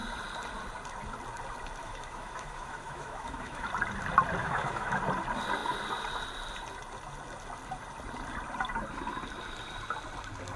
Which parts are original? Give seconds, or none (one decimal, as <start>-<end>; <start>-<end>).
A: 0.0-1.8; 3.7-4.4; 5.0-10.6